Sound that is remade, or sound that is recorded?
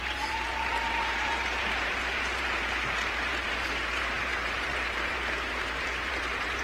remade